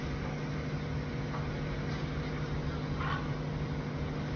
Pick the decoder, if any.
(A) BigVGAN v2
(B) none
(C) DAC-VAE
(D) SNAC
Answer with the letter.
B